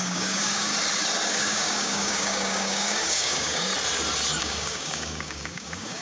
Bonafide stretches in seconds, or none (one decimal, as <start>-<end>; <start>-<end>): 0.7-1.3; 3.7-4.4